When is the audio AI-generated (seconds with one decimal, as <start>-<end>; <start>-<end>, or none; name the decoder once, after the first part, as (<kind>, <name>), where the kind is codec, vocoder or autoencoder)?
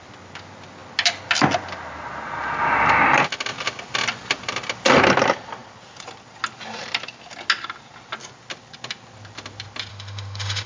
9.9-10.7 (autoencoder, DAC-VAE)